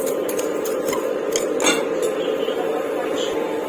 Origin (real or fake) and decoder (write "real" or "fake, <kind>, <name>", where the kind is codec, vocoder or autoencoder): real